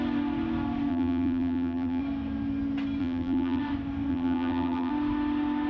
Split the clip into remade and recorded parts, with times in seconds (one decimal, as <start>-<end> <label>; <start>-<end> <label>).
0.0-0.9 recorded; 0.9-2.0 remade; 2.0-3.0 recorded; 3.0-3.6 remade; 3.6-4.1 recorded; 4.1-4.9 remade; 4.9-5.7 recorded